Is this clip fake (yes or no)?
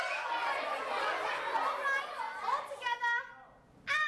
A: no